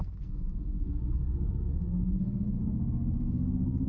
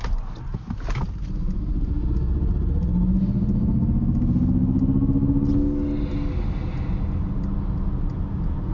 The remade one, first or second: first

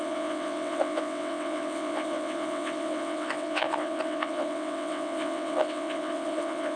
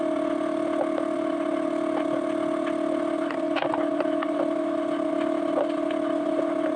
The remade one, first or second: first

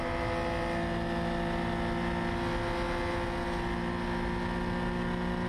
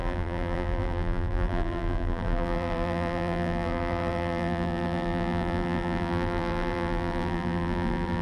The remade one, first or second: second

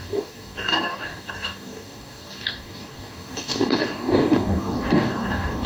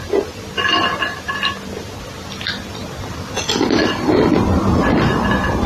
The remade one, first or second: first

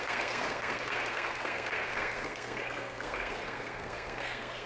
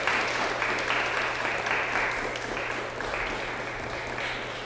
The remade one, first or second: first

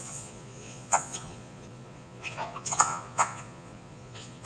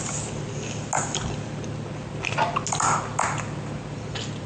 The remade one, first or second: first